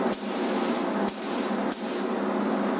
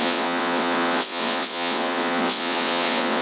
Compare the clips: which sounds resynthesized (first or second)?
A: second